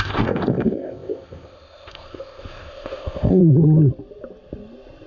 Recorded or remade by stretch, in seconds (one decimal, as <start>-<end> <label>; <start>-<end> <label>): 0.0-3.4 remade; 3.4-5.1 recorded